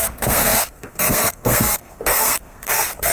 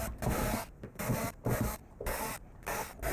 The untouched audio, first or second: second